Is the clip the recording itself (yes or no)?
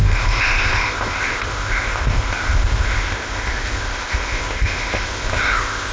no